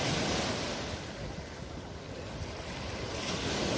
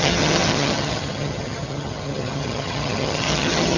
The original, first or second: first